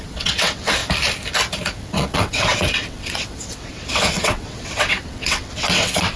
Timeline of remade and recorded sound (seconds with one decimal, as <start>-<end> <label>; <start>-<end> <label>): 0.0-0.8 remade; 0.8-1.8 recorded; 1.8-6.2 remade